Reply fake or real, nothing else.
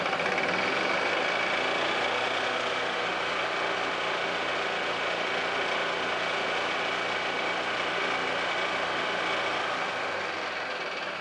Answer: real